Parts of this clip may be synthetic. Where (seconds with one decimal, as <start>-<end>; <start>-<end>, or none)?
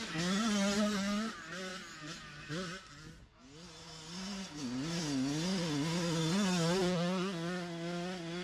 none